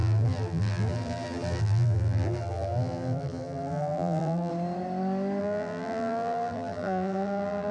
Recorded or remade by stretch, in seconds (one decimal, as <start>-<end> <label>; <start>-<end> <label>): 0.0-4.5 remade; 4.5-5.4 recorded; 5.4-7.7 remade